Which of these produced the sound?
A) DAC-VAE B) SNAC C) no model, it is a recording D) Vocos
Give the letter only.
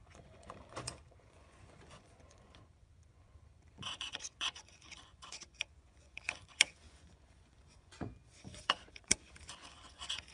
D